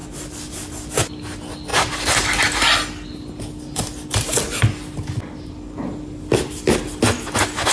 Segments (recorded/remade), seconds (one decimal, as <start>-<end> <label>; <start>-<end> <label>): 0.0-7.7 recorded